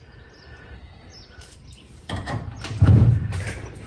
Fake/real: fake